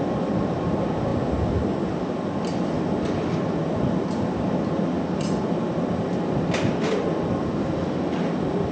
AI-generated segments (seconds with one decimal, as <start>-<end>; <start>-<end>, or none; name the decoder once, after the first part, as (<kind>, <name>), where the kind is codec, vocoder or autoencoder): none